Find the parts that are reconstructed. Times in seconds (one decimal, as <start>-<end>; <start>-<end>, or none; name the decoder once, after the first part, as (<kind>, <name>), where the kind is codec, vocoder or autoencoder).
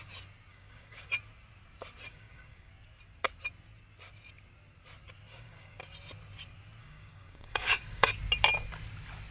0.5-1.1 (codec, DAC); 2.1-2.7; 5.3-5.8; 6.8-8.1